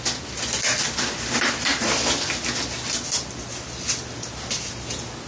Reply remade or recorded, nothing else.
recorded